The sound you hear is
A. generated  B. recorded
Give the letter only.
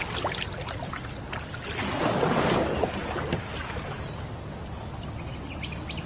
B